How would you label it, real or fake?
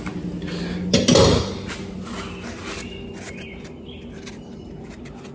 real